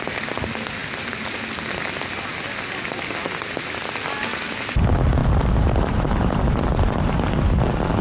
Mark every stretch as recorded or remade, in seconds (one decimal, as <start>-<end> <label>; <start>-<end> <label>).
0.0-5.2 recorded; 5.2-7.3 remade; 7.3-8.0 recorded